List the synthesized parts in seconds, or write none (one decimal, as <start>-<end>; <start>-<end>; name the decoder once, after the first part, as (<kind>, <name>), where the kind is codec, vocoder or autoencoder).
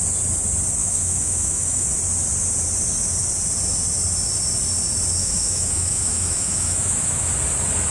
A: 0.8-1.9 (autoencoder, DAC-VAE); 5.2-7.3